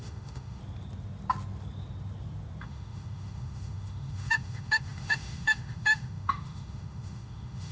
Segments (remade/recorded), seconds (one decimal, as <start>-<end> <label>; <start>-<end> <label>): 0.0-0.6 remade; 0.6-2.6 recorded; 2.6-7.7 remade